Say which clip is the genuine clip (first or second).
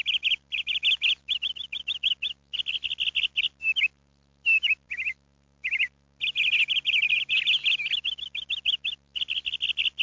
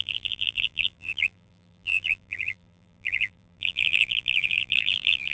first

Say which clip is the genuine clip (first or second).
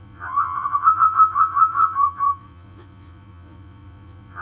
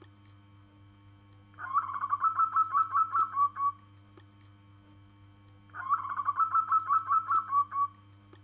second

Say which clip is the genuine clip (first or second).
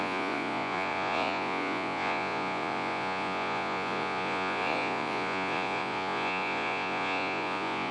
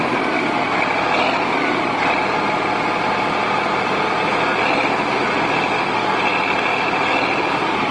second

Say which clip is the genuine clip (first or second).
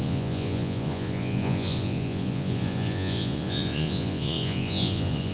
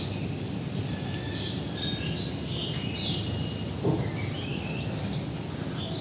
second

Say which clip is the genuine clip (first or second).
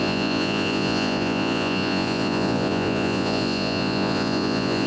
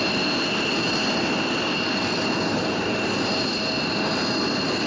second